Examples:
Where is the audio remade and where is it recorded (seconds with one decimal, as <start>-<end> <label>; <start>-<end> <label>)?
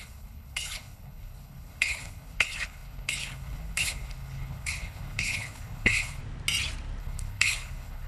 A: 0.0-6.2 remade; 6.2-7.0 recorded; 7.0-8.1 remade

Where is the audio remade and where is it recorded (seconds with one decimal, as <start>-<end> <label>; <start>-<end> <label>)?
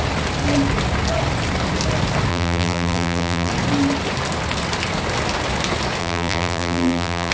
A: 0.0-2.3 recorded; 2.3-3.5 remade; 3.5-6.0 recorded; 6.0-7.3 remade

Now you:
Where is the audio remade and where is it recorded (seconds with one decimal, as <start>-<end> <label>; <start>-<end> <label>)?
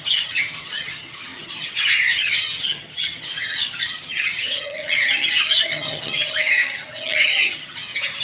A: 0.0-8.2 remade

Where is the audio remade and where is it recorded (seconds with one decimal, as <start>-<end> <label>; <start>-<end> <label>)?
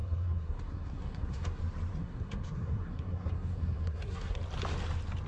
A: 0.0-1.6 remade; 1.6-2.0 recorded; 2.0-4.4 remade; 4.4-5.3 recorded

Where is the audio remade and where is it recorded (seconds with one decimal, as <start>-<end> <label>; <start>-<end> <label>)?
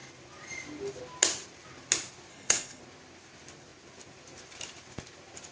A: 0.0-2.3 recorded; 2.3-2.8 remade; 2.8-5.5 recorded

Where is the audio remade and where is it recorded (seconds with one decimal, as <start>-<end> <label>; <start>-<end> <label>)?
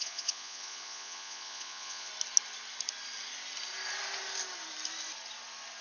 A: 0.0-2.1 remade; 2.1-5.8 recorded